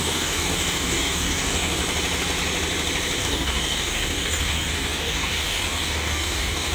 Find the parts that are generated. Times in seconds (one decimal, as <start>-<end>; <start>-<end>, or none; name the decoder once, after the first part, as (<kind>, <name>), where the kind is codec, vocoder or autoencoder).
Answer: 0.0-1.8 (codec, DAC); 3.2-6.7